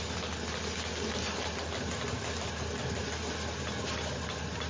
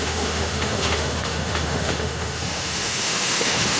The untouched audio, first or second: first